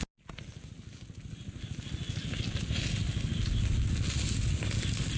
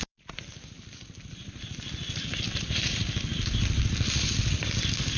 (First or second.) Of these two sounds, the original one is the first